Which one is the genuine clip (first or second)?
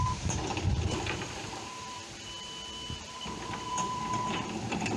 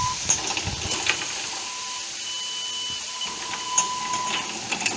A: second